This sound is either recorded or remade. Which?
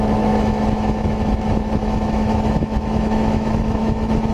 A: remade